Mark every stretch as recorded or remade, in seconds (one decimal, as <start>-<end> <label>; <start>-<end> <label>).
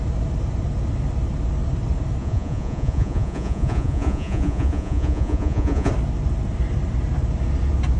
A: 0.0-2.2 recorded; 2.2-5.9 remade; 5.9-8.0 recorded